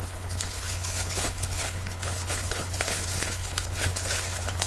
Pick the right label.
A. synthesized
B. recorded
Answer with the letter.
A